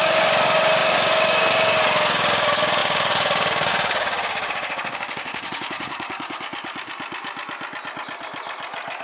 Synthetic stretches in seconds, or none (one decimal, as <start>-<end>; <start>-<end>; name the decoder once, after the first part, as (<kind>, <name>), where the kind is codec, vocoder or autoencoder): 0.0-6.5 (codec, DAC)